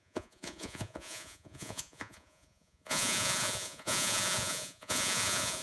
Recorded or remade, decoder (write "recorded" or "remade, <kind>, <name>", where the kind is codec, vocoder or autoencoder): remade, vocoder, Vocos